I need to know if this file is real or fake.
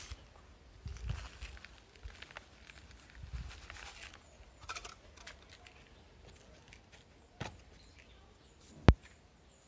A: real